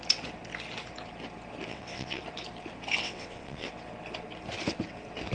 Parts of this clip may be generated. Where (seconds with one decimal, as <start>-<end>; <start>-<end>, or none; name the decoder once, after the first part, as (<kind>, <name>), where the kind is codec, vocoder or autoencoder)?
1.7-2.2 (vocoder, WaveNeXt); 3.0-3.7